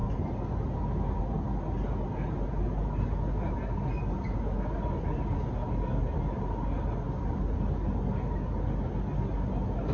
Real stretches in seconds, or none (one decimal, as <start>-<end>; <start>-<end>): 0.0-9.9